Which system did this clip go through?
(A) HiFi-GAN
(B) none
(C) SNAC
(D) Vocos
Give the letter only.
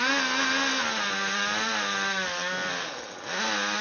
B